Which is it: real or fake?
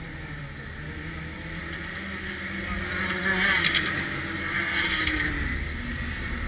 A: real